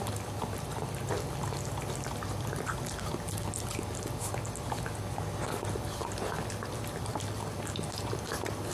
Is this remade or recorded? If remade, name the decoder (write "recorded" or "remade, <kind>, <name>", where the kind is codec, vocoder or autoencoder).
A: recorded